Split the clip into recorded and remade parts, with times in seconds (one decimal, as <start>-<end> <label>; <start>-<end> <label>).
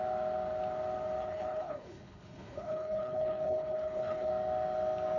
0.0-1.2 recorded; 1.2-4.3 remade; 4.3-5.2 recorded